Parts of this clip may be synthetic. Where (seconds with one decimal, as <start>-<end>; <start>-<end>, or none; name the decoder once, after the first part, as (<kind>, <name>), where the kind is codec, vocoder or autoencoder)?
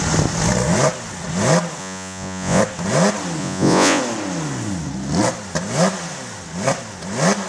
1.8-2.6 (vocoder, Vocos); 3.4-4.0